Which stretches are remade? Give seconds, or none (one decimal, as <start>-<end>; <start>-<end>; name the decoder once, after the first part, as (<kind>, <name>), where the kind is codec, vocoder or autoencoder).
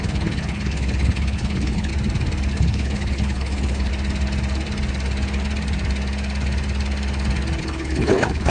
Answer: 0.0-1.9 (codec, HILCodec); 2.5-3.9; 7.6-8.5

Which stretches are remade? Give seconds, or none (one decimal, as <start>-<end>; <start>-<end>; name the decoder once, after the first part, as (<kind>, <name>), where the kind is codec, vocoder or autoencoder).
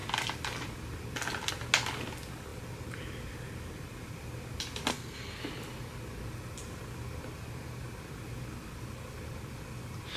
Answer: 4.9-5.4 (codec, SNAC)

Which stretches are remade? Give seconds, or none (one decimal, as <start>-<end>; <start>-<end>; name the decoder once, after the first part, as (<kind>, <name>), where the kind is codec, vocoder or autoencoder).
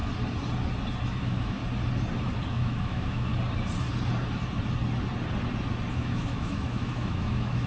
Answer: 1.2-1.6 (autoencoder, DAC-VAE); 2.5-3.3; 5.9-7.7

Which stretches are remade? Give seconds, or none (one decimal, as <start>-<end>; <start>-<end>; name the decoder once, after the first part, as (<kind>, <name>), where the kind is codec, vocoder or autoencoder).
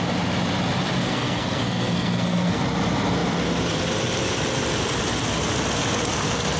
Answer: 1.0-2.6 (codec, SNAC)